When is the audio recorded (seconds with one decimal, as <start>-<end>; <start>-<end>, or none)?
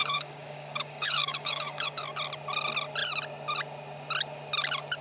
2.0-5.0